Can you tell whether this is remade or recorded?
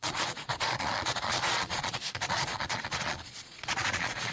remade